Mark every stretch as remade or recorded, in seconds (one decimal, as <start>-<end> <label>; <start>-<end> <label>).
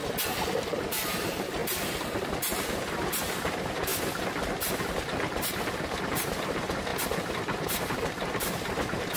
0.0-0.8 recorded; 0.8-1.6 remade; 1.6-2.6 recorded; 2.6-3.9 remade; 3.9-4.8 recorded; 4.8-6.9 remade; 6.9-7.6 recorded; 7.6-9.2 remade